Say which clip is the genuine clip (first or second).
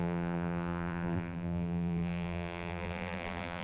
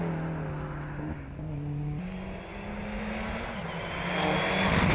second